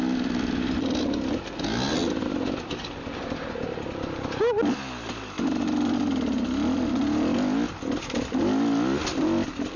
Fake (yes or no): no